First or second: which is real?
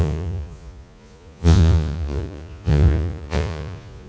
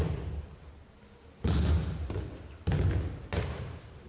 second